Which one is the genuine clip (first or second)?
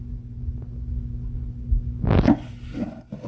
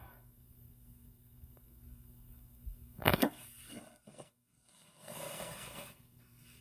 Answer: first